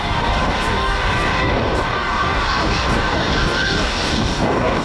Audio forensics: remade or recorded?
remade